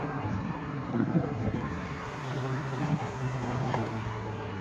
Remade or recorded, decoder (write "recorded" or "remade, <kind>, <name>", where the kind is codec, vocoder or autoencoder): remade, codec, SNAC